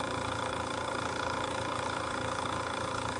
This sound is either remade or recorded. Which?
remade